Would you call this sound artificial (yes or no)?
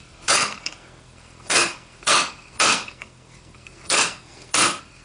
yes